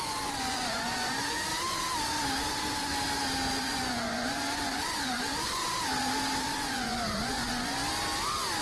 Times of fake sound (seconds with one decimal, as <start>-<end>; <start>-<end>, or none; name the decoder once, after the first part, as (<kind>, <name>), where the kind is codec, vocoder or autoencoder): 0.0-1.5 (vocoder, Vocos); 2.5-2.9; 3.6-5.6; 6.4-7.8